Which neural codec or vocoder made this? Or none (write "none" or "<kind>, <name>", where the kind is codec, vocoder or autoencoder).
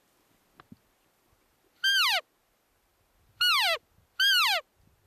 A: none